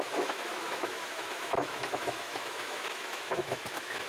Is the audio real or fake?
fake